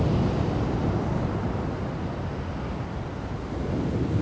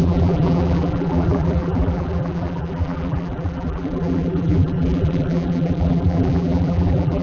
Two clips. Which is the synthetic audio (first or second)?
second